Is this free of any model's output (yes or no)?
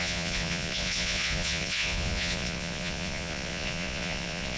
no